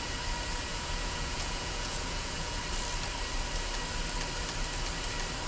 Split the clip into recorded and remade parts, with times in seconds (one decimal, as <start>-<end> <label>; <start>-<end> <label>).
0.0-0.7 recorded; 0.7-2.6 remade; 2.6-5.5 recorded